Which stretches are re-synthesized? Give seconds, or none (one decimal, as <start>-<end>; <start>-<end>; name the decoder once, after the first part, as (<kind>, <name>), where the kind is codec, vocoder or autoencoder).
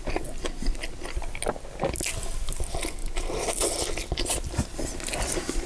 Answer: none